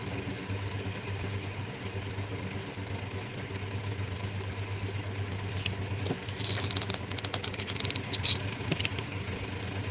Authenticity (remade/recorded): recorded